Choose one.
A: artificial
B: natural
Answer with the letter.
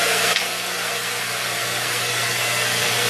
A